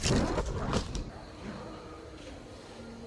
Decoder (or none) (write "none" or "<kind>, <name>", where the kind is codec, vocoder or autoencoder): none